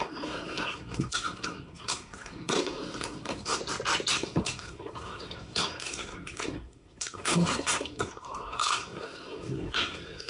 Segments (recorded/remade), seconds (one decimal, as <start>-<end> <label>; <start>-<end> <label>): 0.0-3.6 remade; 3.6-4.1 recorded; 4.1-10.3 remade